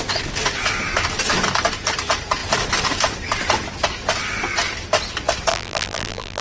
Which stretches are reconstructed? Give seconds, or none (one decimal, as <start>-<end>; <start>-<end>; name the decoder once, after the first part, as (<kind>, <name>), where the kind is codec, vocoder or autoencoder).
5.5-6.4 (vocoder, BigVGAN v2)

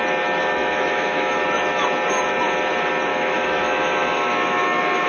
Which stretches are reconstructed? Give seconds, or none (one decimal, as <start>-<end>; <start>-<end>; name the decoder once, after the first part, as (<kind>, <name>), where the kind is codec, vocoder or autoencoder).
0.4-1.3 (autoencoder, DAC-VAE); 3.1-5.1

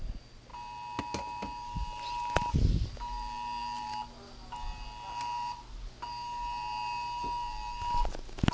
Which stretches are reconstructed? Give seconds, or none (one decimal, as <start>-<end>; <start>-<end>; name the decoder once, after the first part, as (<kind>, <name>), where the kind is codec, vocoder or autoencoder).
none